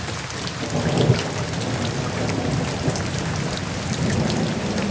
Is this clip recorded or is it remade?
recorded